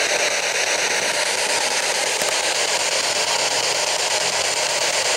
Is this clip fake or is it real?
fake